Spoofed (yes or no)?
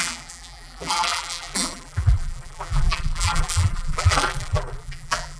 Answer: yes